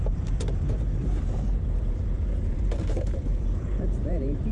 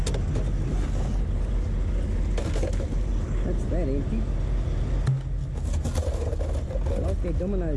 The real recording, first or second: second